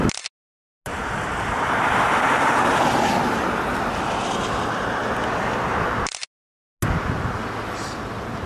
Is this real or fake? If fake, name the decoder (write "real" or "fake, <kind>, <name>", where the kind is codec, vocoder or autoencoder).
real